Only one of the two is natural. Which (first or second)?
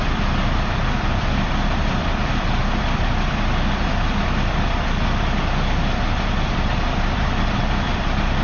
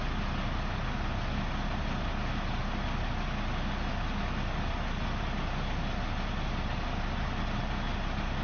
second